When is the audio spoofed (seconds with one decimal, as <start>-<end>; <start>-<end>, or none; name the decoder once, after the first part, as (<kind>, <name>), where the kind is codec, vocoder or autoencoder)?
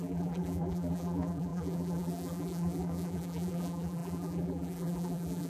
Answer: 0.0-5.5 (vocoder, BigVGAN v2)